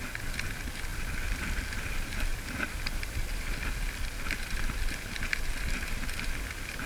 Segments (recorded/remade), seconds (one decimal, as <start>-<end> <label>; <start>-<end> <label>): 0.0-0.9 recorded; 0.9-4.0 remade; 4.0-6.9 recorded